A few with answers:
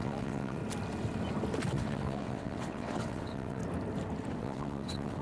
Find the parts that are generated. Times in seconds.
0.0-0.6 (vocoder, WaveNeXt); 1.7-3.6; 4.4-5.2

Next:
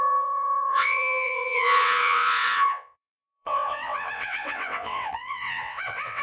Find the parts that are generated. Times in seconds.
0.0-6.2 (vocoder, WaveNeXt)

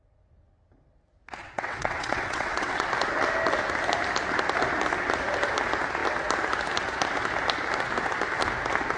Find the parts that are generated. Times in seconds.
1.4-2.9 (vocoder, WaveNeXt)

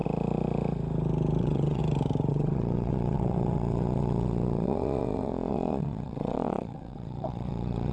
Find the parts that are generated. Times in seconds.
1.4-1.8 (vocoder, WaveNeXt); 2.3-7.9

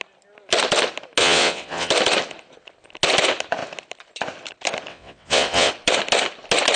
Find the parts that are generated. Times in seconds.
1.2-1.9 (vocoder, WaveNeXt); 4.9-5.7

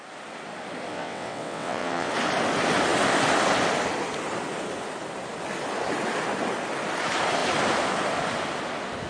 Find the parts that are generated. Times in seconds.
0.9-2.1 (vocoder, WaveNeXt)

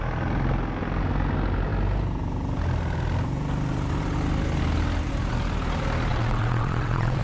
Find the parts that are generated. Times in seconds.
6.1-7.2 (vocoder, WaveNeXt)

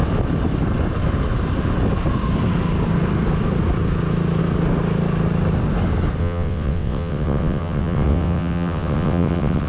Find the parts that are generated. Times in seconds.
6.2-9.7 (vocoder, WaveNeXt)